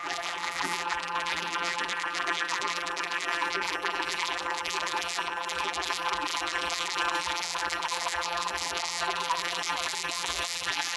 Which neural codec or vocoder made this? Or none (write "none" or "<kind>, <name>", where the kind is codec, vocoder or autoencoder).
vocoder, BigVGAN v2